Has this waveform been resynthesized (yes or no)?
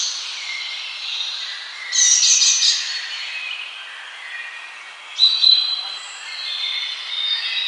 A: no